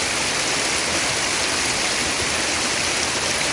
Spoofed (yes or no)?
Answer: no